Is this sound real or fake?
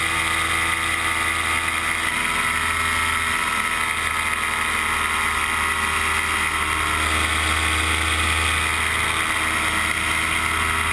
real